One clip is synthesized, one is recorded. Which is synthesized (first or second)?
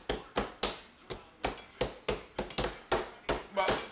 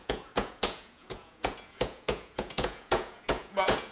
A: second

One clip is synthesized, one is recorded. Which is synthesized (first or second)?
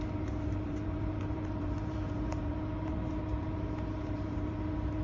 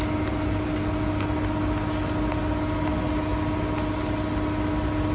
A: first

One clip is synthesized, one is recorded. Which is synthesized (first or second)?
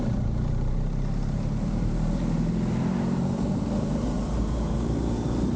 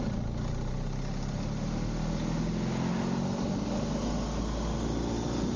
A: first